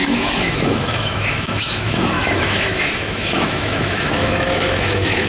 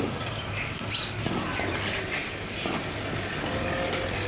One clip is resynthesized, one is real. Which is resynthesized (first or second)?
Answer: first